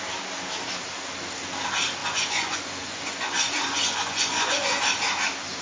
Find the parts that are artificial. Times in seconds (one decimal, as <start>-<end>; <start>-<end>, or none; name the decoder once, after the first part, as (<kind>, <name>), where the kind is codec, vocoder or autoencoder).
2.0-4.8 (vocoder, Vocos)